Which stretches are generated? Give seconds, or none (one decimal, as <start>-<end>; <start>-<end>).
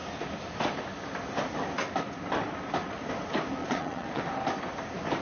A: 3.6-4.2